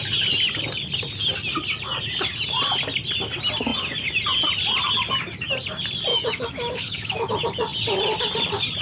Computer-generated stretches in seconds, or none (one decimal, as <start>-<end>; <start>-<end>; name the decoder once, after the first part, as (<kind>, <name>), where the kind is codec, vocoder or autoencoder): 6.1-7.3 (autoencoder, DAC-VAE)